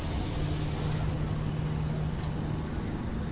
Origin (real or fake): real